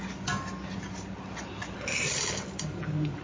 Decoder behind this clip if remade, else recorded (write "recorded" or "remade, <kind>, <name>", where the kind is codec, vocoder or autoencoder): recorded